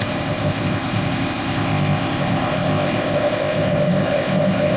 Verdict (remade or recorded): remade